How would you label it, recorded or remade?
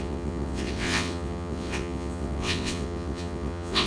remade